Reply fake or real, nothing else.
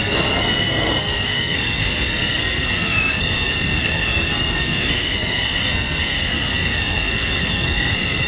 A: fake